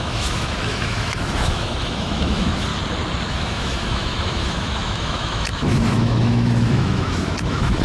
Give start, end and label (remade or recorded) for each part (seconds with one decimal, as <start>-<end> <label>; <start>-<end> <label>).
0.0-2.7 remade; 2.7-3.3 recorded; 3.3-7.8 remade